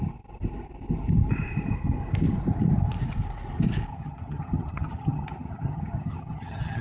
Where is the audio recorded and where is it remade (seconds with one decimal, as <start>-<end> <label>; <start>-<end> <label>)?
0.0-3.9 recorded; 3.9-6.8 remade